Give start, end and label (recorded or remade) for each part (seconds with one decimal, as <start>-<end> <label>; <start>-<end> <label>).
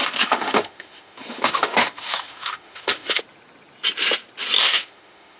0.0-3.2 remade; 3.2-4.6 recorded; 4.6-5.4 remade